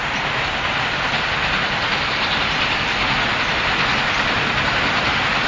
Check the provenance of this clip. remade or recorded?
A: recorded